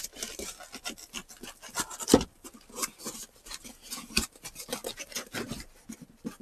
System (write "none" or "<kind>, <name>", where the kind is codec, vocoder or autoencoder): vocoder, BigVGAN v2